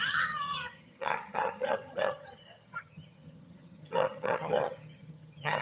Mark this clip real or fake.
fake